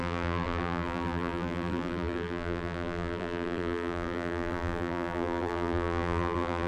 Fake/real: fake